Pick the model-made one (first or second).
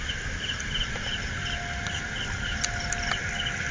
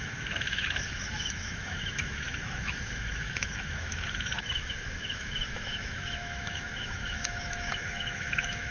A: second